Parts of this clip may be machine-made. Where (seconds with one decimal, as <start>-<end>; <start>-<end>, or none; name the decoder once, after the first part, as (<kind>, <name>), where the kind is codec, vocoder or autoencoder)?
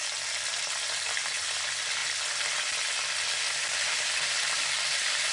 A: none